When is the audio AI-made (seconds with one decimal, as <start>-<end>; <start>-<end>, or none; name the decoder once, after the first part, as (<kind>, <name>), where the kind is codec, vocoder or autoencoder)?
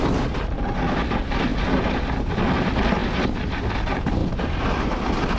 1.5-2.5 (vocoder, BigVGAN v2); 3.0-3.6